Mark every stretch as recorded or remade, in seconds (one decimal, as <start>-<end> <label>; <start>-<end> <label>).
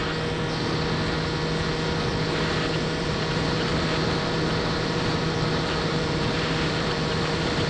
0.0-2.7 recorded; 2.7-3.7 remade; 3.7-4.6 recorded; 4.6-7.7 remade